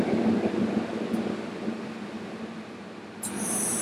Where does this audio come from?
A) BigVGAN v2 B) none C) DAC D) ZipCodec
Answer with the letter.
B